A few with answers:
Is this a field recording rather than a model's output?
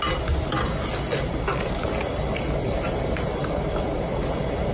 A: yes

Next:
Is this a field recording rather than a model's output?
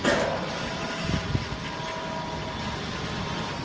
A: yes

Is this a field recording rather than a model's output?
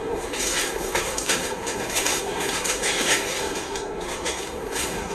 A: no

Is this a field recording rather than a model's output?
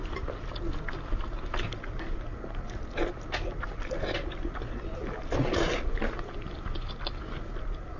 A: yes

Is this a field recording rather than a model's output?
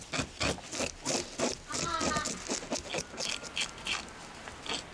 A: yes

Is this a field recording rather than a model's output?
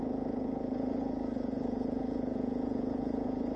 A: no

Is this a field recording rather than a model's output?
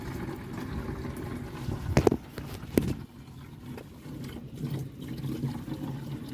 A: yes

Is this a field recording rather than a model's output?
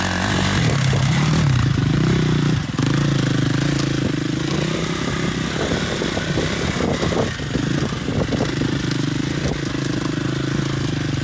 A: yes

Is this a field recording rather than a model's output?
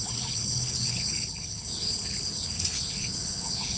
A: no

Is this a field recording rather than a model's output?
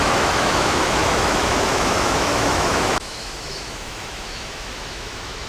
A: no